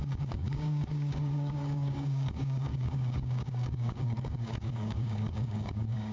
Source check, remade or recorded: remade